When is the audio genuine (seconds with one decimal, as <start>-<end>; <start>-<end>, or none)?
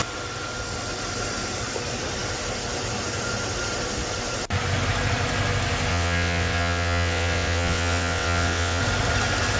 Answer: 0.0-5.9; 8.8-9.6